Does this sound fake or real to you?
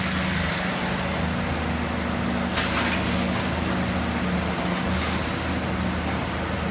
real